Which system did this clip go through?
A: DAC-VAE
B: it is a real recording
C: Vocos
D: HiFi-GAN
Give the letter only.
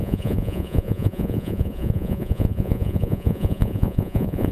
C